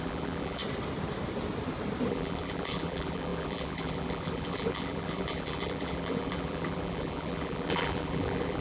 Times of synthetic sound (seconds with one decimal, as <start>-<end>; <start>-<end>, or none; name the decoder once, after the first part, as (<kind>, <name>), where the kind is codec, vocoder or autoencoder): 0.0-0.6 (vocoder, BigVGAN v2); 2.1-8.6